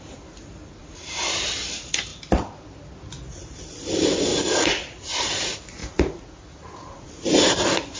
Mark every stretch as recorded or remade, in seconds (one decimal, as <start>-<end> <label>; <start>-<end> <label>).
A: 0.0-0.8 recorded; 0.8-1.3 remade; 1.3-4.3 recorded; 4.3-5.1 remade; 5.1-5.8 recorded; 5.8-7.1 remade; 7.1-8.0 recorded